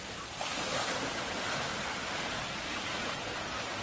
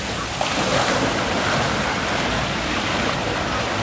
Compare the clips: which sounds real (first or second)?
second